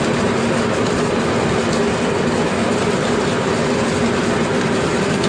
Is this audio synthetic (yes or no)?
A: no